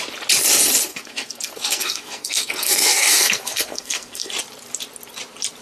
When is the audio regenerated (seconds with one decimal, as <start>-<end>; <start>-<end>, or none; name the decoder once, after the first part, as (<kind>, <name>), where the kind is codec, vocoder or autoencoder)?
0.9-4.3 (codec, SNAC)